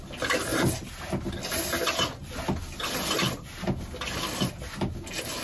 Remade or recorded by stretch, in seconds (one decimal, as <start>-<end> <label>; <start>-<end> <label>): 0.0-5.4 recorded